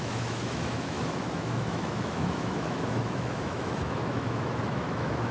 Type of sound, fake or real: fake